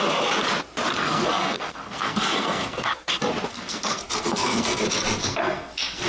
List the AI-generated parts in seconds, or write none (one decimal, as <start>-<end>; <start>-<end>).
1.0-3.1; 3.5-4.8; 5.2-6.1